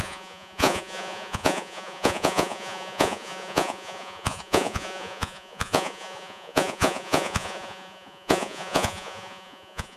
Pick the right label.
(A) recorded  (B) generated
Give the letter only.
B